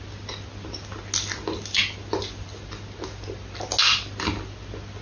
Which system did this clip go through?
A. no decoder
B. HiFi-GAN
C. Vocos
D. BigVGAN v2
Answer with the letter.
A